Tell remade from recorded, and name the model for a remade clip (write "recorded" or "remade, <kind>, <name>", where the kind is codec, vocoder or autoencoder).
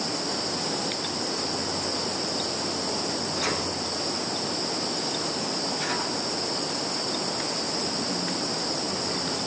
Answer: recorded